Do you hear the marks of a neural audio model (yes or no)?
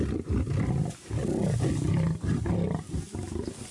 no